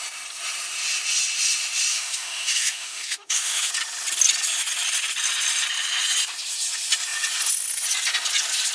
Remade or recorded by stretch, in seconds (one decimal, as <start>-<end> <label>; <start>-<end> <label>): 0.0-1.9 recorded; 1.9-3.7 remade; 3.7-8.7 recorded